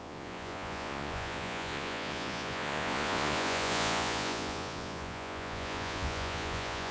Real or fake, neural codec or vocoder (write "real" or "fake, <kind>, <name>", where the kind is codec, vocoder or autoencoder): fake, vocoder, Vocos